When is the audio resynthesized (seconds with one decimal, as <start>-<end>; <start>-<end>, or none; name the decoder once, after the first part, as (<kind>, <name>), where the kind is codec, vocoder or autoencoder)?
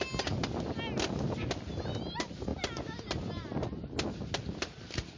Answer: none